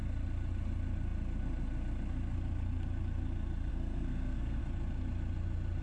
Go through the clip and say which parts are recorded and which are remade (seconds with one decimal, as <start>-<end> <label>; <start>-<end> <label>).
0.0-3.7 recorded; 3.7-4.6 remade; 4.6-5.8 recorded